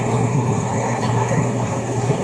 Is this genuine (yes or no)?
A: no